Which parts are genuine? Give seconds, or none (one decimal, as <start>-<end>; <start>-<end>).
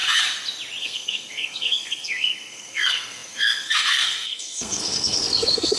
0.0-0.8